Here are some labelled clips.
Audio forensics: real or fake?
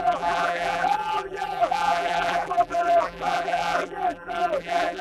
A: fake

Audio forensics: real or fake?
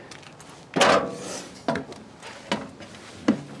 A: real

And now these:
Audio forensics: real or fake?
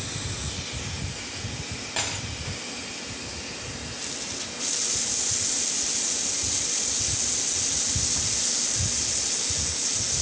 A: real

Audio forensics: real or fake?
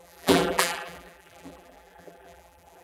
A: fake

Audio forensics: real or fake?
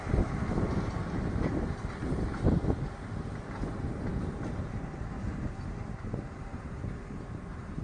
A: fake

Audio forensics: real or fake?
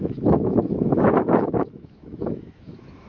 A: fake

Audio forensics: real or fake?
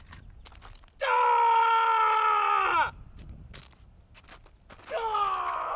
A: real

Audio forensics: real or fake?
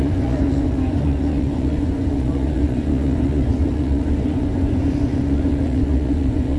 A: fake